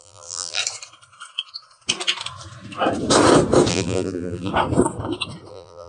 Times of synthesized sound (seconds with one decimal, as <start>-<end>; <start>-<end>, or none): 0.0-0.6; 3.7-4.5; 5.5-5.9